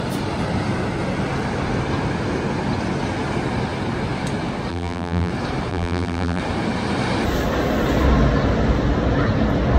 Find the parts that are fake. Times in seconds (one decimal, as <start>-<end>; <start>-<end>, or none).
4.7-5.3; 5.7-6.4